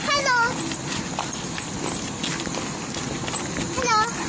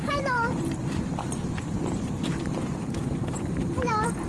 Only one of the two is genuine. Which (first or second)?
first